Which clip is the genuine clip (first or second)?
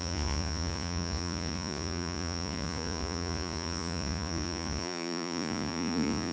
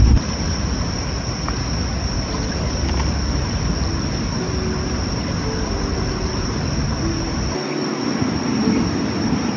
second